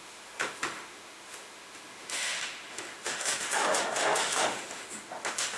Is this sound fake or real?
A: fake